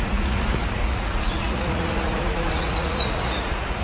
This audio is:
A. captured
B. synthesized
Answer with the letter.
B